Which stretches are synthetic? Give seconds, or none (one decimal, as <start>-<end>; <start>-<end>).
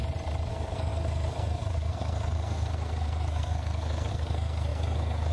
0.5-5.3